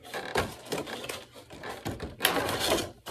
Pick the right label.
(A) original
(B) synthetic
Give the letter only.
A